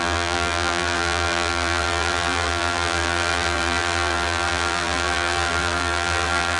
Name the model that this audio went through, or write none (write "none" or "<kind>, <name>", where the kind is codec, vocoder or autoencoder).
vocoder, BigVGAN v2